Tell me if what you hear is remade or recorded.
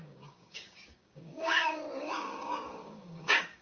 remade